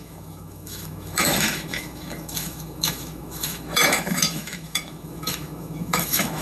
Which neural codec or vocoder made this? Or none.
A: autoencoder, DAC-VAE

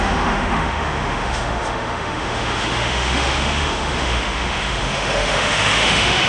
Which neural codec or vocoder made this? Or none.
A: autoencoder, DAC-VAE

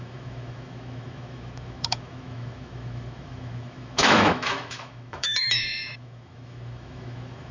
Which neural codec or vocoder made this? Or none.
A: autoencoder, DAC-VAE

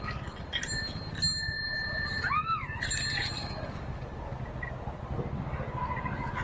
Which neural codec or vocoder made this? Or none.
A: none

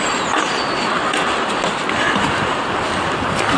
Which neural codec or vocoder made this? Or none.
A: none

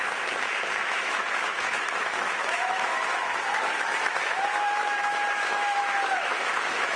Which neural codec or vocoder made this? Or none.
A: autoencoder, DAC-VAE